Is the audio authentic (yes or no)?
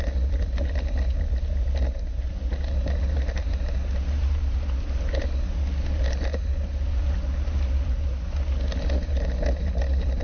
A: yes